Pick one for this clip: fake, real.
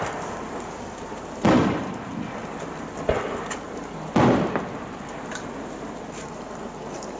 real